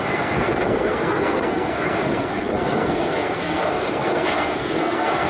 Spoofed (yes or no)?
yes